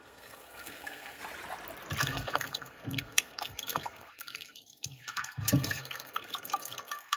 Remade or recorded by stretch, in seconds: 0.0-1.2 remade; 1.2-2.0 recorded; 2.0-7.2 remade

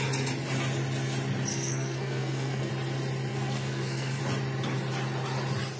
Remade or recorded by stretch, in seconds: 0.0-1.5 recorded; 1.5-2.7 remade; 2.7-3.3 recorded; 3.3-4.2 remade; 4.2-5.8 recorded

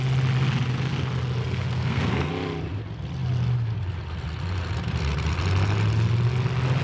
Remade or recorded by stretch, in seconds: 0.0-1.4 recorded; 1.4-2.3 remade; 2.3-6.8 recorded

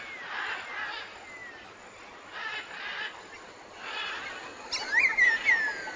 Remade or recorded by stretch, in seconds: 0.0-6.0 recorded

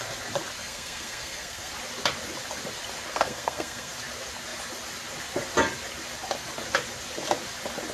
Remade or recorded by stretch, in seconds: 0.0-0.6 recorded; 0.6-1.7 remade; 1.7-3.1 recorded; 3.1-3.9 remade; 3.9-7.9 recorded